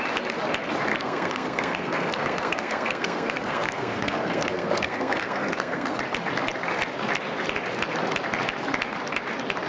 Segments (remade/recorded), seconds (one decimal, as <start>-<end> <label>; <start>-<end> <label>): 0.0-0.9 recorded; 0.9-6.0 remade; 6.0-9.7 recorded